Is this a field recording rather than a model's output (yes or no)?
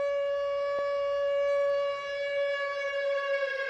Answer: yes